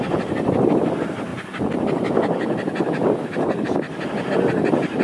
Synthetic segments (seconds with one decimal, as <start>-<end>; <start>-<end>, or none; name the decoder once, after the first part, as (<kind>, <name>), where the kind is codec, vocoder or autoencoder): none